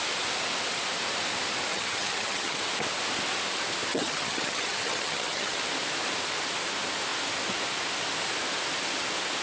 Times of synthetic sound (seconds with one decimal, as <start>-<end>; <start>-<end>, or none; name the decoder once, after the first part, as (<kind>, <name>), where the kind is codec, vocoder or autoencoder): 1.7-2.6 (vocoder, HiFi-GAN); 3.9-5.6

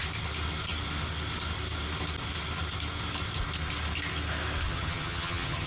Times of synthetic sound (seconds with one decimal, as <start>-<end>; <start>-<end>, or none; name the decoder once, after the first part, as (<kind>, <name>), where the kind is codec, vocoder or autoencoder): 4.7-5.7 (vocoder, HiFi-GAN)

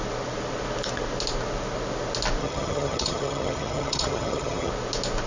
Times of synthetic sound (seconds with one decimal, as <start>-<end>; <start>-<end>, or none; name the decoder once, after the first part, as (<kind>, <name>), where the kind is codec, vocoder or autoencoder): 2.4-4.7 (vocoder, HiFi-GAN)

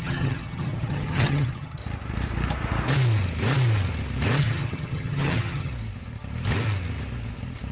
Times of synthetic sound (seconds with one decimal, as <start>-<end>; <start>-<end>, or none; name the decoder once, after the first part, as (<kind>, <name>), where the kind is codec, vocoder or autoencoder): 0.0-1.8 (vocoder, HiFi-GAN); 4.4-5.7

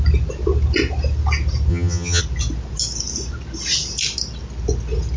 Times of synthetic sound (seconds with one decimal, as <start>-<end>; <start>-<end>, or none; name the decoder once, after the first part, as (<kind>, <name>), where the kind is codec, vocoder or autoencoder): 1.7-2.2 (vocoder, HiFi-GAN)

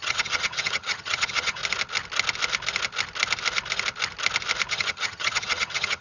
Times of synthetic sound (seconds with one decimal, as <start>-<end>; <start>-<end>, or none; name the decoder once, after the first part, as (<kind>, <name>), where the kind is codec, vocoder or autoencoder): 0.0-1.6 (vocoder, HiFi-GAN); 4.7-6.0

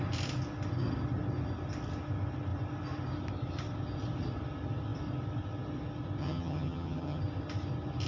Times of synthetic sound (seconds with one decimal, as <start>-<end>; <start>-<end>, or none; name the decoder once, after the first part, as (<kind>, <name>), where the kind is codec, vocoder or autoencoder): 6.2-7.2 (vocoder, HiFi-GAN)

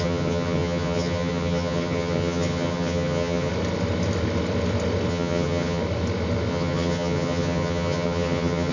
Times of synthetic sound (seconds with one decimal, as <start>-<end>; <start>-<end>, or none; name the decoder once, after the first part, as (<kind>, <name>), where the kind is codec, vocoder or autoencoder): 0.0-3.5 (vocoder, HiFi-GAN); 5.1-5.8; 6.5-8.7